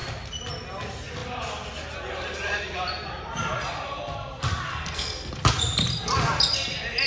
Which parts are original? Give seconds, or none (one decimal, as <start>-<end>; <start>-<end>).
0.0-4.7; 5.3-7.1